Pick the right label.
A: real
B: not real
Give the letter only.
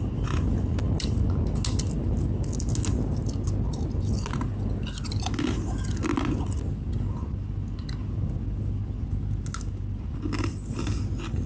A